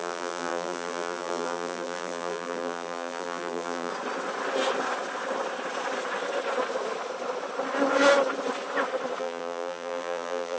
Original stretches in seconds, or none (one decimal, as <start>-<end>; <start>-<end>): 3.9-9.2